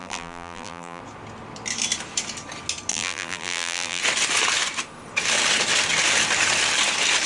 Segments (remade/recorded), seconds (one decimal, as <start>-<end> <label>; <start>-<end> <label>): 0.0-1.0 remade; 1.0-2.9 recorded; 2.9-4.0 remade; 4.0-7.3 recorded